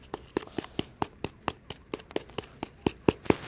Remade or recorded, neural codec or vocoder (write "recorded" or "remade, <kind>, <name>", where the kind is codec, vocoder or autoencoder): recorded